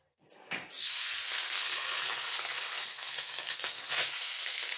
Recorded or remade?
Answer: remade